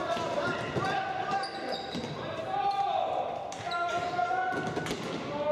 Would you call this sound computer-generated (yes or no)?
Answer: no